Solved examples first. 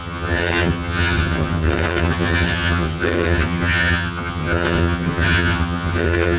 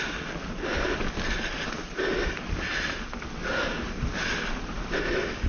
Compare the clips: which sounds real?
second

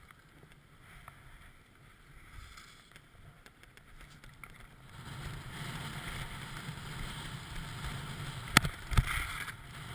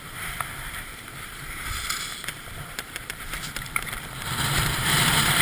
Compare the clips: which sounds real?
first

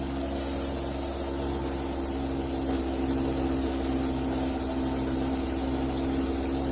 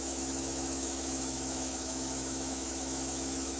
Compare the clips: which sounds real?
first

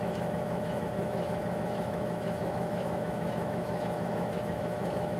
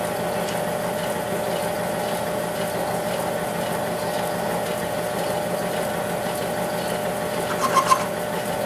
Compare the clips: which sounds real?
second